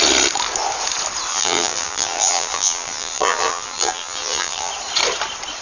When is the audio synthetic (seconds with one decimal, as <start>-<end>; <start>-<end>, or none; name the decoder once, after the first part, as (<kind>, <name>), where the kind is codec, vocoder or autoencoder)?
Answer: 1.3-4.7 (vocoder, BigVGAN v2)